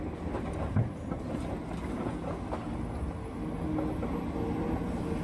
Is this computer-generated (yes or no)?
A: no